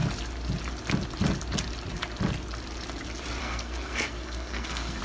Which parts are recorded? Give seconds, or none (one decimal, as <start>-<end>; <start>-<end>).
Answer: 0.0-3.4